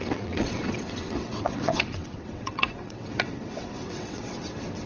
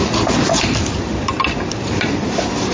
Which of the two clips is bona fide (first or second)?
second